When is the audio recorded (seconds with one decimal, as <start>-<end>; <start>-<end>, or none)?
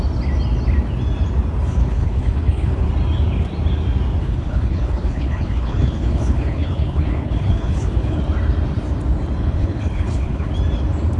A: 0.0-1.8; 2.9-4.2; 8.2-9.4; 10.5-11.2